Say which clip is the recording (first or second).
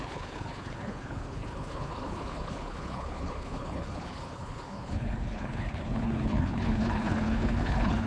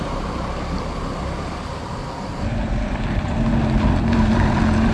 second